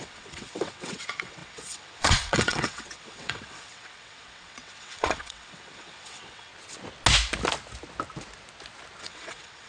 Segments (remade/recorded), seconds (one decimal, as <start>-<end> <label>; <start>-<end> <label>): 0.0-6.5 remade; 6.5-9.0 recorded; 9.0-9.7 remade